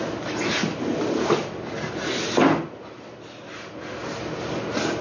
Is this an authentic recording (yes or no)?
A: yes